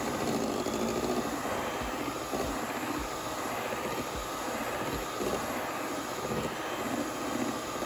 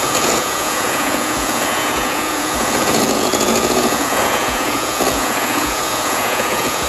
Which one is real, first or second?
first